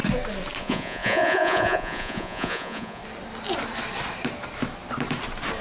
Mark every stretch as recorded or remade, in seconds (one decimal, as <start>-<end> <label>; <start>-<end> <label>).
0.0-0.6 recorded; 0.6-3.0 remade; 3.0-5.6 recorded